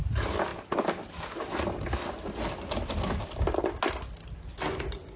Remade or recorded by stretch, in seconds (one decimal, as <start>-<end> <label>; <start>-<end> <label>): 0.0-5.2 recorded